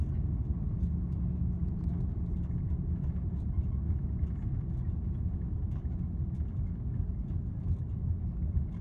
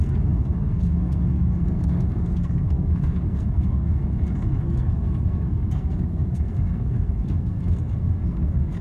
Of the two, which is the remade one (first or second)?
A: second